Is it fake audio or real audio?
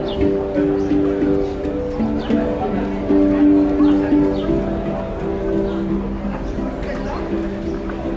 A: real